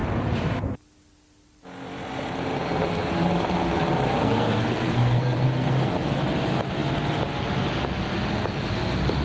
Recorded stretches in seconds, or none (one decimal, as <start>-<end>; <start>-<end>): 0.0-4.2; 6.2-9.2